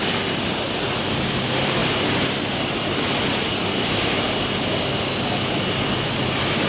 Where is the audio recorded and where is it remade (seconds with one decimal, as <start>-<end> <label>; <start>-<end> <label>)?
0.0-1.8 remade; 1.8-5.8 recorded; 5.8-6.7 remade